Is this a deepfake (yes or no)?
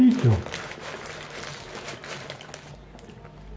no